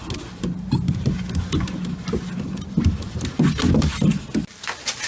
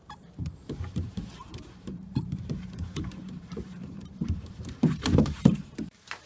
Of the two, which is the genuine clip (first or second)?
first